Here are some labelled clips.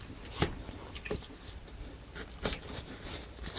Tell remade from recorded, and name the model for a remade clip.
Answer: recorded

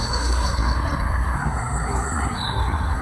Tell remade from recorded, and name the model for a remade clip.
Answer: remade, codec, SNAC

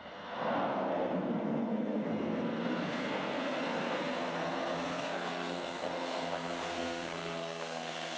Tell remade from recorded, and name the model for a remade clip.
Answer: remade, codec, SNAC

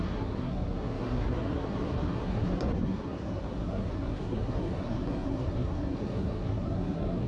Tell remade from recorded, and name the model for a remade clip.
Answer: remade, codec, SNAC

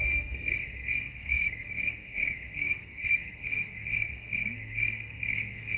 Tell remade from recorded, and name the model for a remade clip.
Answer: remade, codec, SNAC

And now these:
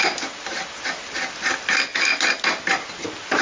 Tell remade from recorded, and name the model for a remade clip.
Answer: recorded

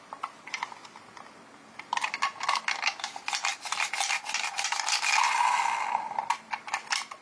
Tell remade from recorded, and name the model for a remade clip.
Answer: recorded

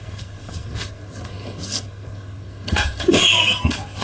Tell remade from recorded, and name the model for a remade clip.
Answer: remade, codec, SNAC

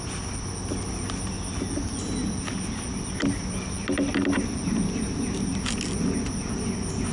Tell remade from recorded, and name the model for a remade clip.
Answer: recorded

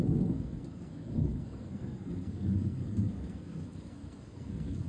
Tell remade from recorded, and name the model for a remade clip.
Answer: remade, codec, SNAC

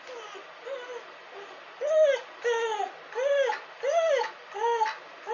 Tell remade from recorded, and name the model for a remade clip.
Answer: recorded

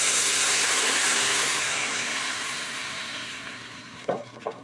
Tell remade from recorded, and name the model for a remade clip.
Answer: remade, codec, SNAC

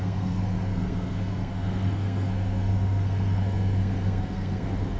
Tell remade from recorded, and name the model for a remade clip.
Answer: remade, codec, SNAC